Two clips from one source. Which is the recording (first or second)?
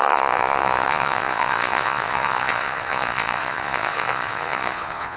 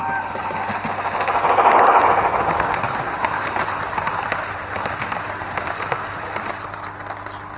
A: second